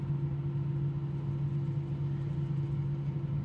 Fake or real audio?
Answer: real